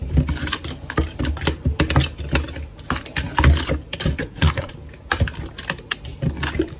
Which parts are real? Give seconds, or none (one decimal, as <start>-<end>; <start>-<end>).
0.0-4.2; 4.7-6.8